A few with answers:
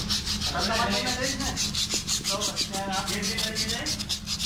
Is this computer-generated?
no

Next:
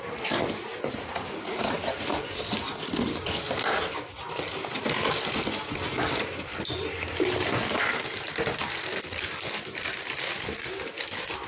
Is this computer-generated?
no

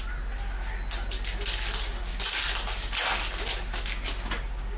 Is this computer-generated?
no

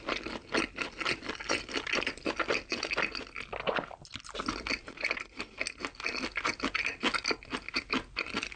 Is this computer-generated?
no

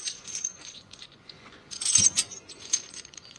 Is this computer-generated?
yes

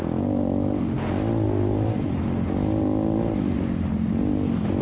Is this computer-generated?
no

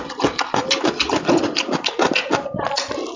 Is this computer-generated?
no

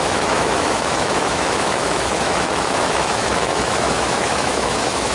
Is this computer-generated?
yes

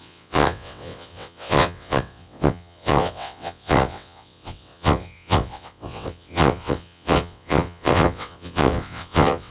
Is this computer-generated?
yes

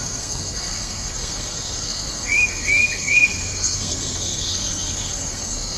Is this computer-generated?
yes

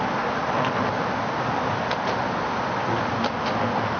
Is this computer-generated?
no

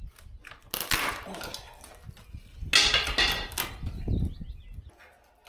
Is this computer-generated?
no